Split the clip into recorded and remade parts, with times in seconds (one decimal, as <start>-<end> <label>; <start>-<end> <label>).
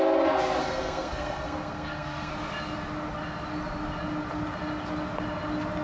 0.0-0.6 recorded; 0.6-2.3 remade; 2.3-5.8 recorded